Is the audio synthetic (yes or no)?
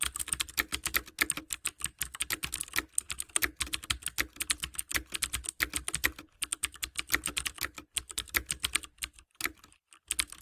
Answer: no